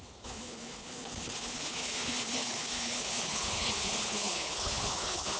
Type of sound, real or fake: fake